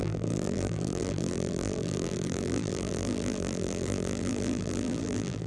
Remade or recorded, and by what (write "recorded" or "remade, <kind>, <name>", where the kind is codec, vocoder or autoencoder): remade, vocoder, BigVGAN v2